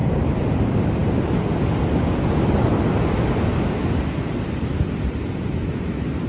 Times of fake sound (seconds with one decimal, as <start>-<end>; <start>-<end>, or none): 0.0-0.6